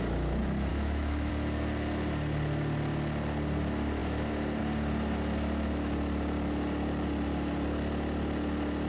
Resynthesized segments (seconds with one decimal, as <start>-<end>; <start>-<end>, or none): 0.7-1.3